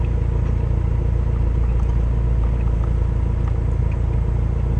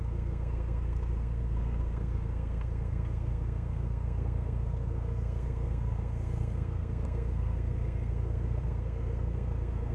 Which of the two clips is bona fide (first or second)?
first